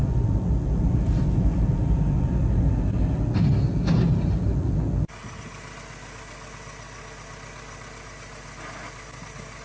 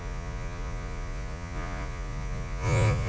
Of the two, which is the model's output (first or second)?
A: second